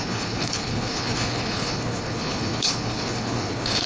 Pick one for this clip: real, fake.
fake